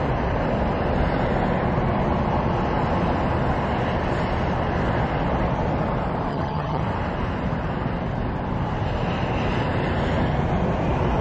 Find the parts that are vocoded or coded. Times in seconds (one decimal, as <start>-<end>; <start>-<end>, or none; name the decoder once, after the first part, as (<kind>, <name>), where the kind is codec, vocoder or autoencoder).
6.3-6.8 (vocoder, HiFi-GAN)